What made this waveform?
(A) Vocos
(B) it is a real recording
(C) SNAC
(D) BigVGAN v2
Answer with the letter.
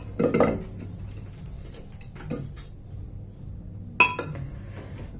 B